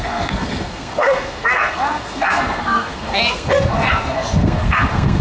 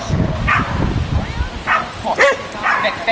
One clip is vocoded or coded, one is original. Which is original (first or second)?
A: second